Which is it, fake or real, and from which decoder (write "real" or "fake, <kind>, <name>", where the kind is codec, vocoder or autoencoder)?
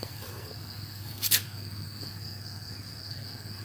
fake, codec, SNAC